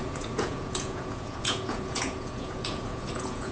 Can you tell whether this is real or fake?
fake